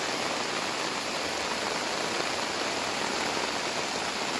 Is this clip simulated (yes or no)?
no